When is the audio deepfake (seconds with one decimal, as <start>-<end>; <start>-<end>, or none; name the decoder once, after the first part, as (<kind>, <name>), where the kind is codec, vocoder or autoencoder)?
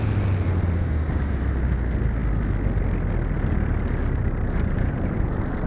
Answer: 0.8-1.4 (codec, DAC)